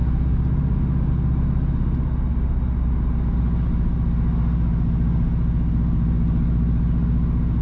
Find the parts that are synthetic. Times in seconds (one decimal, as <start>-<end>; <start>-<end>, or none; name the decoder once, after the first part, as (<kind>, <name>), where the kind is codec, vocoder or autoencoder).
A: none